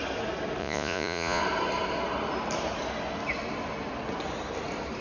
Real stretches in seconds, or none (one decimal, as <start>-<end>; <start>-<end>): 0.0-0.6; 1.4-5.0